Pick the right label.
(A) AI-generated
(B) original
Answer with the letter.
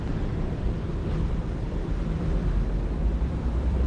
A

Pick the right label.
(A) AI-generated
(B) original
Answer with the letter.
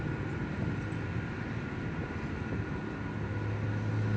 B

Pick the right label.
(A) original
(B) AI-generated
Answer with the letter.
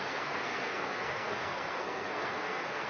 B